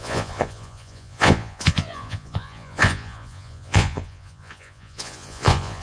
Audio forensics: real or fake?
fake